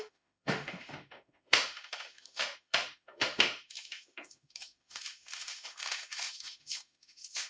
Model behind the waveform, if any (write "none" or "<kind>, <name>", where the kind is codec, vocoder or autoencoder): autoencoder, DAC-VAE